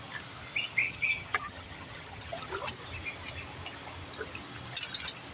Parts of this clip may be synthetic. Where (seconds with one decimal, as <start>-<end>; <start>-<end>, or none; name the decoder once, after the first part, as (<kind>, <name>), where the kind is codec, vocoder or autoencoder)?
0.8-2.5 (vocoder, HiFi-GAN)